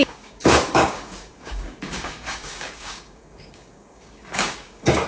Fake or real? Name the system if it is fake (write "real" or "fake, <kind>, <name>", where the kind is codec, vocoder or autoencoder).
fake, codec, DAC